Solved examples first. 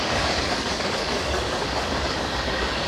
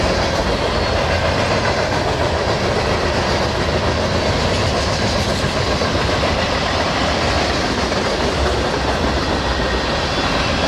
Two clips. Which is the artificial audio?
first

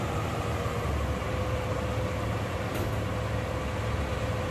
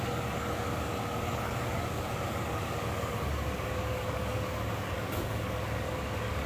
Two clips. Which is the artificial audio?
second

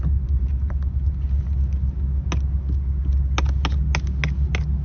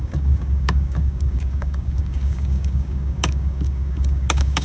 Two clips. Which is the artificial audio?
second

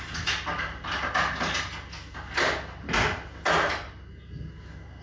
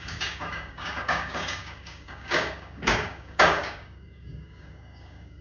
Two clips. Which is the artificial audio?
second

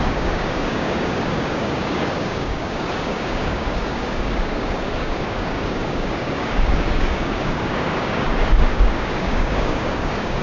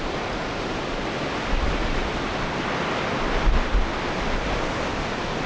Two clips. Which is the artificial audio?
first